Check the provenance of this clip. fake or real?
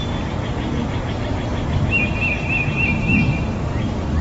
real